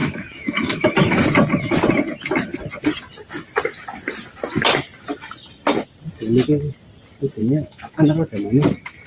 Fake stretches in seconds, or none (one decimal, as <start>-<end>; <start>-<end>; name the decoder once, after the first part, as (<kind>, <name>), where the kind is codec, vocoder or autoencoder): 0.0-1.2 (autoencoder, DAC-VAE); 7.4-8.1

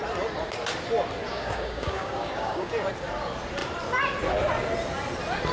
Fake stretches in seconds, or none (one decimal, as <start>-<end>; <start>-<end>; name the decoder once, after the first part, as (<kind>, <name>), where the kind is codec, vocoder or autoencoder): 1.3-2.7 (codec, DAC)

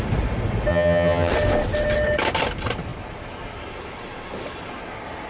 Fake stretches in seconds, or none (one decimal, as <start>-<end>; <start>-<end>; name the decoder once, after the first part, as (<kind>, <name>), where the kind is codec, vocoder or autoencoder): 0.7-1.3 (vocoder, HiFi-GAN)

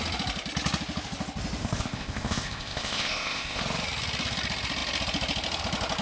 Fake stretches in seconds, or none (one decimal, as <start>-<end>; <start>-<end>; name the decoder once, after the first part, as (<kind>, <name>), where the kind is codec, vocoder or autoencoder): 1.6-3.6 (codec, ZipCodec)

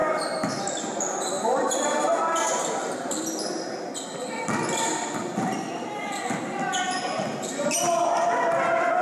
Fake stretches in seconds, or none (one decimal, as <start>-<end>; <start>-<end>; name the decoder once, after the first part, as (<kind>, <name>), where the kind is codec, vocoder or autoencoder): none